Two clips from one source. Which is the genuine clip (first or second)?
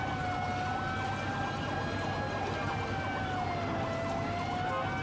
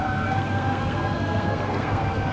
first